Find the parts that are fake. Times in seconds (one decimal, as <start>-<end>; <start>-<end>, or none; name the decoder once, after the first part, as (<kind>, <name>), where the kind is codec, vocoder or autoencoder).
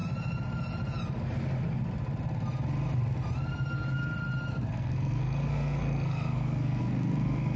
4.5-7.6 (codec, SNAC)